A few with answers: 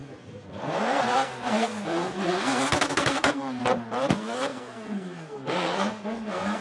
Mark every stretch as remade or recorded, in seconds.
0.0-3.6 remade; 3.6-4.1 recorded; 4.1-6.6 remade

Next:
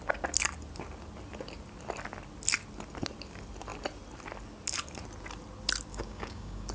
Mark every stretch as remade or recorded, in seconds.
0.0-5.9 recorded; 5.9-6.7 remade

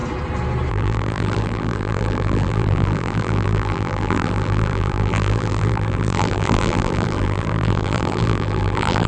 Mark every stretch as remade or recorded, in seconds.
0.0-0.7 recorded; 0.7-9.1 remade

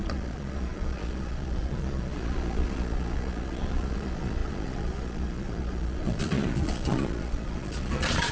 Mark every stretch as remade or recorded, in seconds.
0.0-8.3 remade